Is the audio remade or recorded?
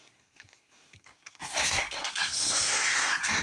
remade